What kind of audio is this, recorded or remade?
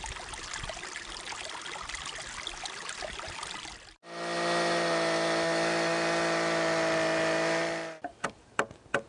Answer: recorded